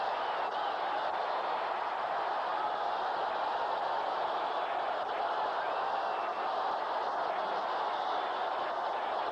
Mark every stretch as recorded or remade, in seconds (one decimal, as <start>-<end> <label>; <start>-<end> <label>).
0.0-9.3 recorded